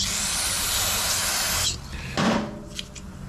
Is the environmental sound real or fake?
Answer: real